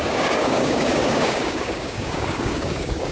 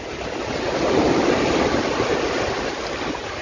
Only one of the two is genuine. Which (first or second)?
second